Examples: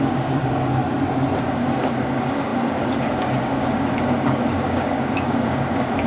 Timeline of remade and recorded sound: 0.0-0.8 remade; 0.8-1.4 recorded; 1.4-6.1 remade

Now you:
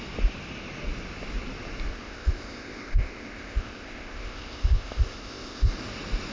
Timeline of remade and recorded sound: 0.0-1.9 recorded; 1.9-5.7 remade; 5.7-6.3 recorded

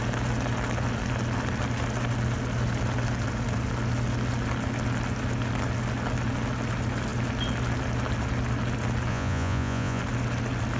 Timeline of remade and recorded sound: 0.0-9.1 recorded; 9.1-10.0 remade; 10.0-10.8 recorded

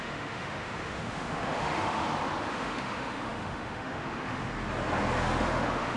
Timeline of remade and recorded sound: 0.0-2.0 remade; 2.0-2.5 recorded; 2.5-4.5 remade; 4.5-5.2 recorded; 5.2-6.0 remade

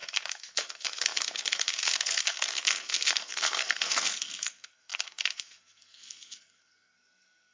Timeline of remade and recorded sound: 0.0-7.5 remade

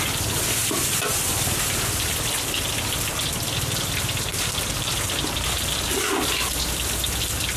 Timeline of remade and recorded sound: 0.0-7.6 recorded

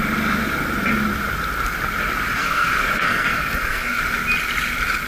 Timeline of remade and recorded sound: 0.0-2.4 recorded; 2.4-4.0 remade; 4.0-5.1 recorded

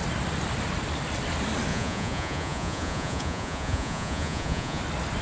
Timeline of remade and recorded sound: 0.0-1.7 recorded; 1.7-4.8 remade; 4.8-5.2 recorded